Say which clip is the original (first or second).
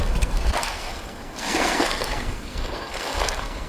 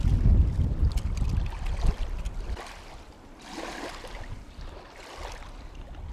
second